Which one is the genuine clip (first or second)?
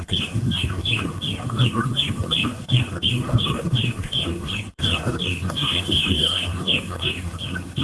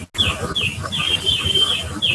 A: second